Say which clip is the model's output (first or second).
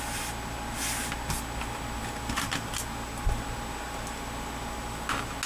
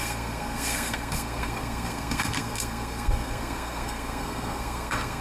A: second